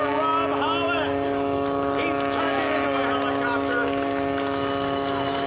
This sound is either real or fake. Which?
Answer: real